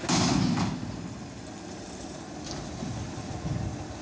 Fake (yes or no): no